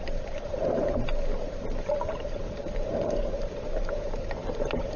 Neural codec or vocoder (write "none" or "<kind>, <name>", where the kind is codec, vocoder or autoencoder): vocoder, BigVGAN v2